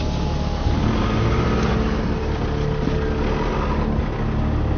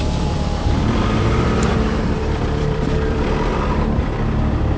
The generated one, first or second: second